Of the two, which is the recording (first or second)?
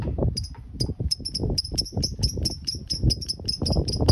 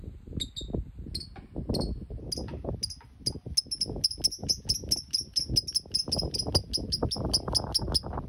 second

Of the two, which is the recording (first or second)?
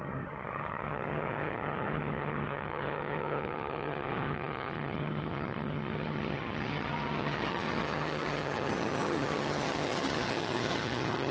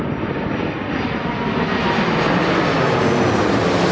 second